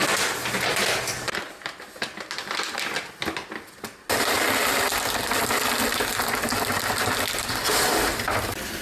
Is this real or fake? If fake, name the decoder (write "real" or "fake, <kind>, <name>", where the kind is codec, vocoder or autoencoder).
real